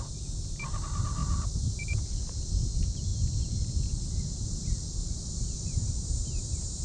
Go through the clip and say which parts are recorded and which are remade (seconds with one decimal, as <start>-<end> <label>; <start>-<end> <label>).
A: 0.0-1.2 recorded; 1.2-2.6 remade; 2.6-3.1 recorded; 3.1-6.8 remade